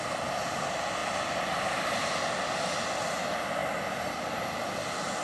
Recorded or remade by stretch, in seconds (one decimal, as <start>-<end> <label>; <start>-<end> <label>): 0.0-3.6 recorded; 3.6-4.6 remade; 4.6-5.2 recorded